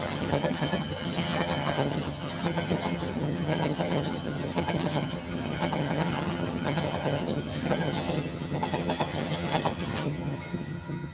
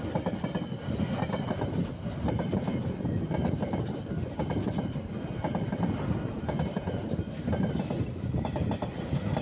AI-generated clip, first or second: first